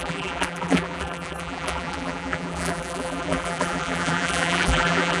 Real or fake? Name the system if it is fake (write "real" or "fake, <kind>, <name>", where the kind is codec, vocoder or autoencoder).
fake, vocoder, BigVGAN v2